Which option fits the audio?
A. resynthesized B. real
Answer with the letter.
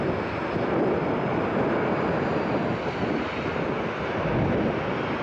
B